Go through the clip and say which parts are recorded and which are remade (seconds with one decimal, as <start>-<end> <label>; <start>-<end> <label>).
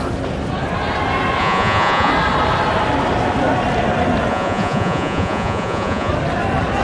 0.0-1.4 recorded; 1.4-2.1 remade; 2.1-4.3 recorded; 4.3-6.1 remade; 6.1-6.8 recorded